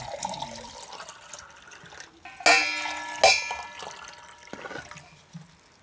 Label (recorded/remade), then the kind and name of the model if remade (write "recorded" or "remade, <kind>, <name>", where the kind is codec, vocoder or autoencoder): recorded